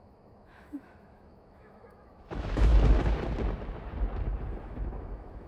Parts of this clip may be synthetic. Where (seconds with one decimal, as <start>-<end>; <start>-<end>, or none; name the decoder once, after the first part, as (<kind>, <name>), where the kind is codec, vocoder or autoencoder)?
0.0-2.7 (autoencoder, DAC-VAE); 4.6-5.5